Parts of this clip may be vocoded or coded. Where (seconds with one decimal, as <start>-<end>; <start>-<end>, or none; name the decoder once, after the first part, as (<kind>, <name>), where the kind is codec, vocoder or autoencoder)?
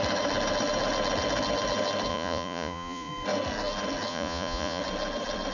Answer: 2.1-3.1 (vocoder, Vocos); 4.1-4.8